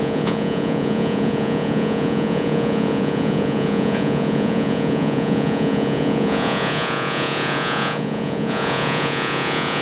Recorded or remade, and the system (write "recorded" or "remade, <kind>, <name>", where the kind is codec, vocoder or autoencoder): remade, vocoder, Vocos